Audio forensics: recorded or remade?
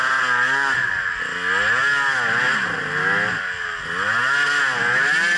recorded